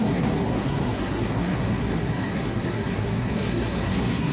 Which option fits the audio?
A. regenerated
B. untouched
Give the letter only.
A